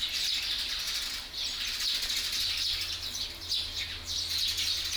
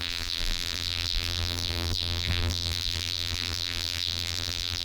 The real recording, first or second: first